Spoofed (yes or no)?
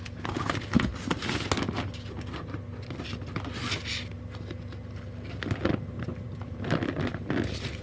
no